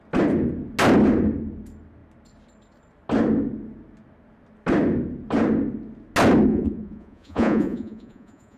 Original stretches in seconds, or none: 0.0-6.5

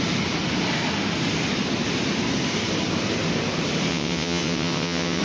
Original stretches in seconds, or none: 0.0-3.9

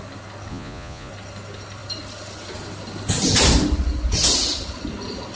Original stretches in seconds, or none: 0.0-0.5; 1.1-5.3